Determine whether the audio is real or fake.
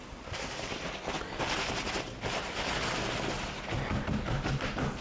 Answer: real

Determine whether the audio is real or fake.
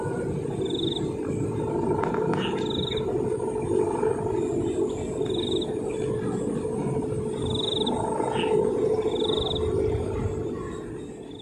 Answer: real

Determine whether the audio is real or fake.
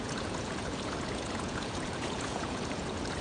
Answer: fake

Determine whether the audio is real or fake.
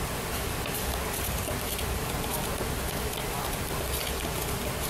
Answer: real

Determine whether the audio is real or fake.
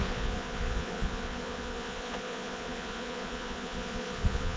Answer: fake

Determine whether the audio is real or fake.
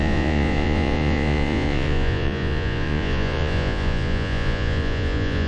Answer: fake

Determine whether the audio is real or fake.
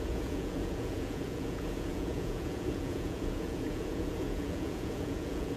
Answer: fake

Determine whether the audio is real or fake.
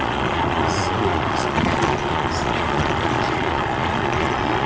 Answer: fake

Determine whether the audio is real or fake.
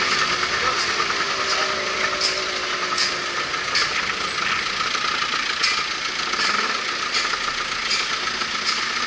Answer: real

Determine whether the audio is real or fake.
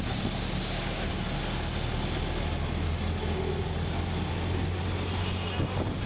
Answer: real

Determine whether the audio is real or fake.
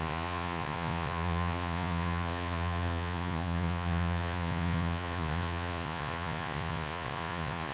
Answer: fake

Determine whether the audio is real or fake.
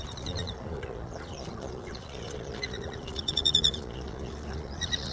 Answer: fake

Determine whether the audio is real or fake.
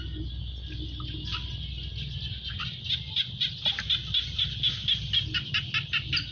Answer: real